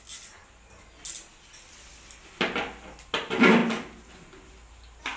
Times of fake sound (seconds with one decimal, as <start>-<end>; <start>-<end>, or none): none